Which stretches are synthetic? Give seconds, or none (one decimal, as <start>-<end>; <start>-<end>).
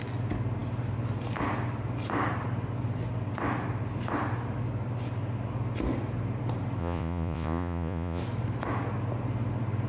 6.8-8.2